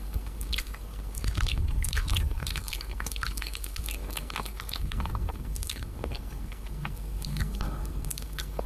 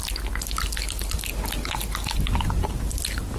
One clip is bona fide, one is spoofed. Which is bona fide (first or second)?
second